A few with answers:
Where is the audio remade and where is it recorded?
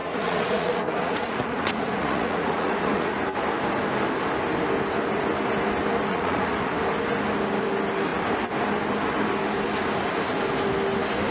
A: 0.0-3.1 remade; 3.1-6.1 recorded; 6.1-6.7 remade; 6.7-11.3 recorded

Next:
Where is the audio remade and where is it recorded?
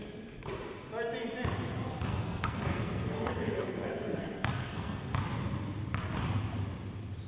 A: 0.0-2.1 recorded; 2.1-5.2 remade; 5.2-7.3 recorded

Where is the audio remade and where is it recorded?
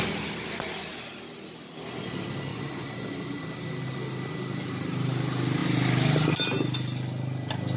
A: 0.0-2.5 recorded; 2.5-3.1 remade; 3.1-7.8 recorded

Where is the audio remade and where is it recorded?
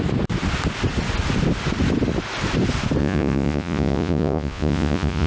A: 0.0-3.0 recorded; 3.0-5.3 remade